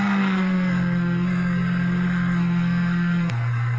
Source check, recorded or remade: remade